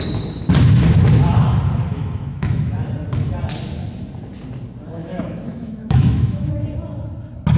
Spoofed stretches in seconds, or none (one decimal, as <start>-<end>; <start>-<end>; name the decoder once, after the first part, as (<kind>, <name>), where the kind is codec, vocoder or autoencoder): 1.9-2.7 (autoencoder, DAC-VAE); 5.0-6.5